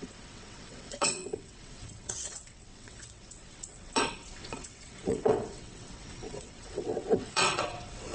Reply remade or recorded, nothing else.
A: remade